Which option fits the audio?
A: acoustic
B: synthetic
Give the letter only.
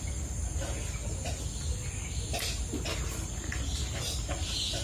A